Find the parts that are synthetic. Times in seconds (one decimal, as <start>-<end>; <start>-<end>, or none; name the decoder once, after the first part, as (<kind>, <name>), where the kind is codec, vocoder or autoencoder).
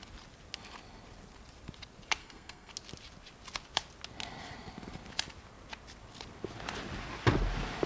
2.2-2.7 (codec, SNAC)